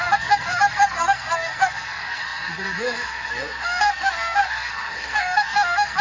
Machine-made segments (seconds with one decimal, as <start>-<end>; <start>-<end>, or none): 0.0-6.0

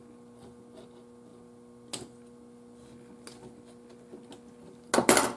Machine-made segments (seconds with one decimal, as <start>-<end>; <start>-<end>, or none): none